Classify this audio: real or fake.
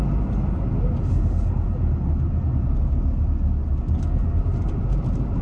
real